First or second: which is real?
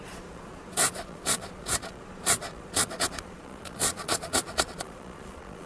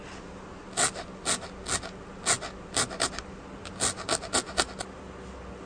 second